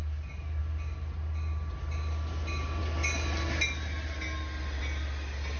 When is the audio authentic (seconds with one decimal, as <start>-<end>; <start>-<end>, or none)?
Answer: 0.0-5.6